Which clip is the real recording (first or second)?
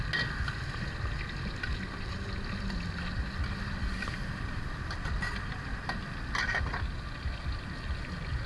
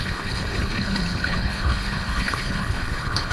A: first